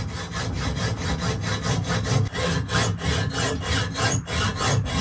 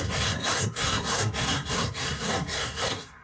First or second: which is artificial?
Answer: second